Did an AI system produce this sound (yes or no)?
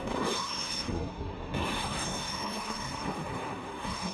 yes